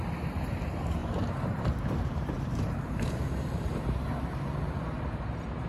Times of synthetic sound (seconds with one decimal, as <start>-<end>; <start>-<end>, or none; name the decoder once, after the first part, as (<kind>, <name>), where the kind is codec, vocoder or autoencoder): 1.0-4.4 (vocoder, BigVGAN v2)